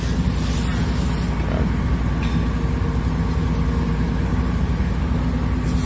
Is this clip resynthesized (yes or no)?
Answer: no